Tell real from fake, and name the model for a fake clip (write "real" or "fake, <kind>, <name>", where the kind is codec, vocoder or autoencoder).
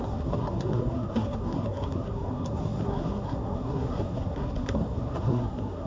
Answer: fake, codec, SNAC